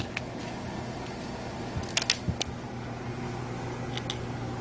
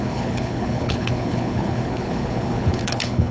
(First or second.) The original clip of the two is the first